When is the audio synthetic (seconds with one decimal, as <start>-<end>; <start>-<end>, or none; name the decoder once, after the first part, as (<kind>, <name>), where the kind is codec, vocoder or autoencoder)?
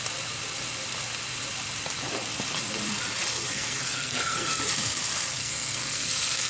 3.5-4.6 (codec, SNAC); 5.4-6.5